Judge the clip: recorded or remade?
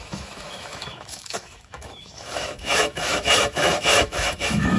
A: remade